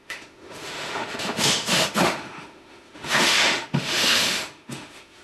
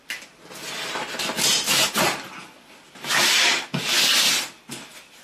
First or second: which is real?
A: second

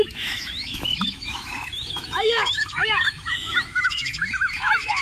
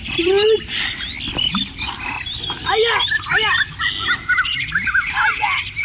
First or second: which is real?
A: second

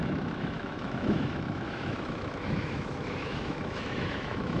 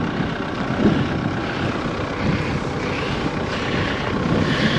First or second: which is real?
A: second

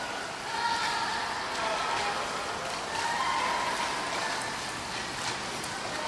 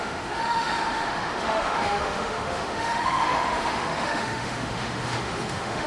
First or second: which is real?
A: first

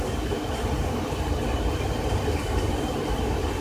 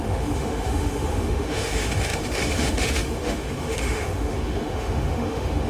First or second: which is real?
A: first